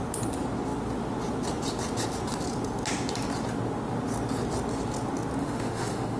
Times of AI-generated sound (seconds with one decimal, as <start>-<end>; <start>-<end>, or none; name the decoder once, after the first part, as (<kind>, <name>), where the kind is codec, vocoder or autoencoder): 5.4-6.2 (autoencoder, DAC-VAE)